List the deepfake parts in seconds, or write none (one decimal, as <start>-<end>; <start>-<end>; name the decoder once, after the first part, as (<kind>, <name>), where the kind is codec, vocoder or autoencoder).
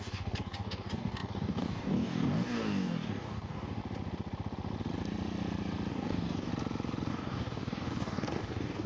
0.0-3.8 (codec, DAC); 5.9-6.5; 7.1-8.9